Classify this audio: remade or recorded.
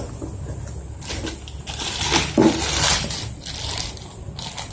recorded